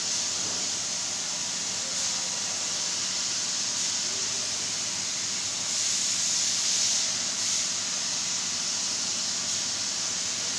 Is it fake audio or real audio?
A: real